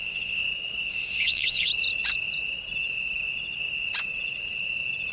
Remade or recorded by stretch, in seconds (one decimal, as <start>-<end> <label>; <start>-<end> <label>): 0.0-0.4 remade; 0.4-0.9 recorded; 0.9-1.7 remade; 1.7-5.1 recorded

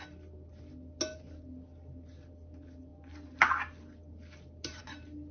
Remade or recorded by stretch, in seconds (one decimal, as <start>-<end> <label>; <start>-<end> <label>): 0.0-5.3 recorded